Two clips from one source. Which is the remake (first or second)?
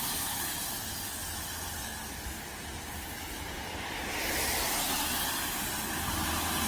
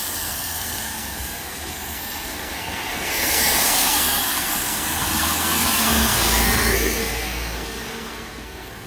second